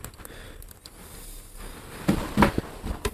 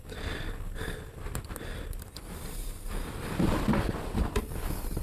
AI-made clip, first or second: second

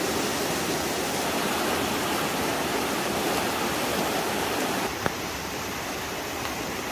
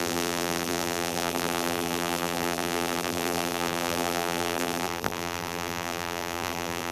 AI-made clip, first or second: second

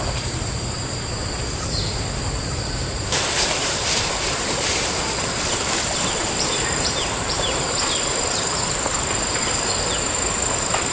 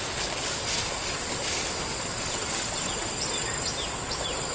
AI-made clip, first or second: first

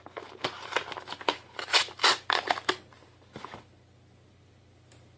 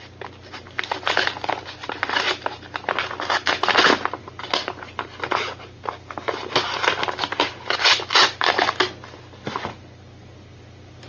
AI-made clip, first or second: first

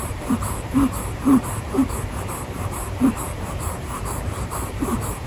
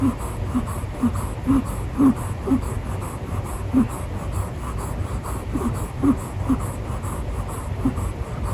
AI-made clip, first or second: first